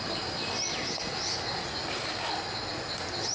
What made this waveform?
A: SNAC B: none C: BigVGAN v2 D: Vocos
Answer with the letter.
B